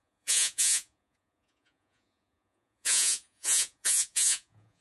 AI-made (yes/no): yes